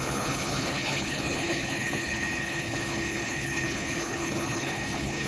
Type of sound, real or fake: fake